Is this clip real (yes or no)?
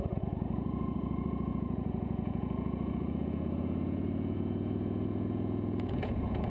no